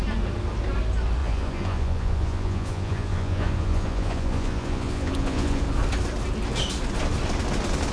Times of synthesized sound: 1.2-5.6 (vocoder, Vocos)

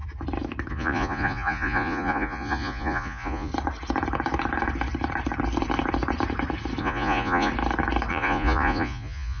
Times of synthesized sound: 0.7-3.5 (vocoder, Vocos); 6.8-7.5; 8.1-9.4

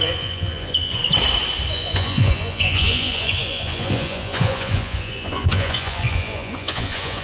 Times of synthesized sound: 0.0-1.0 (vocoder, Vocos); 1.7-7.2

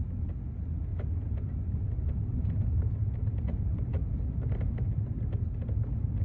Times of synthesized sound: none

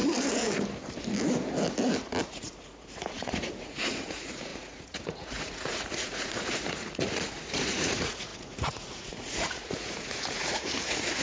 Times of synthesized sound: 2.3-11.2 (vocoder, Vocos)

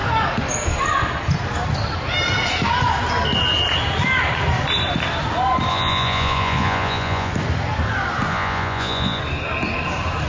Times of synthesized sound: 5.7-7.3 (vocoder, Vocos); 8.3-9.2

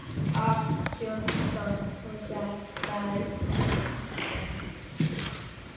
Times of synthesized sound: 0.0-0.7 (vocoder, Vocos)